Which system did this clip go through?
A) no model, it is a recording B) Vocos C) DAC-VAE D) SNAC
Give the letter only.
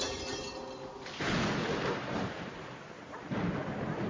A